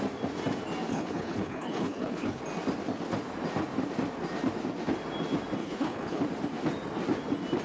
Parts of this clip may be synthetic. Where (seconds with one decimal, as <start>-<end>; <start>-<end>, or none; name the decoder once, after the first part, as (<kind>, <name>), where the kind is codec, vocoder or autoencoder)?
0.9-2.4 (codec, HILCodec); 5.6-6.2